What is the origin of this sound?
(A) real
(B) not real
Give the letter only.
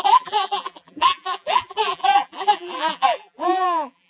B